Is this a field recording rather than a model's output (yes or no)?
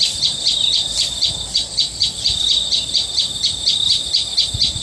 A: yes